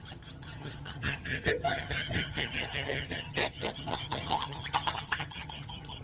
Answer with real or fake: fake